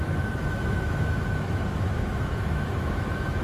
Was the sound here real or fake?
fake